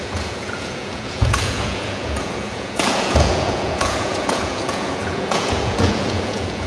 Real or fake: fake